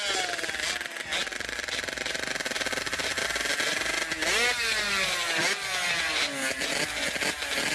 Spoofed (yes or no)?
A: no